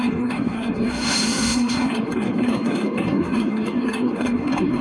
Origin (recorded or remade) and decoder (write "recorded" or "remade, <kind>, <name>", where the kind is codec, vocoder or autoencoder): remade, codec, SNAC